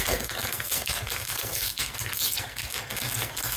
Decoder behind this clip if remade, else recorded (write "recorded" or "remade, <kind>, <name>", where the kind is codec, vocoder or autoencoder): remade, codec, SNAC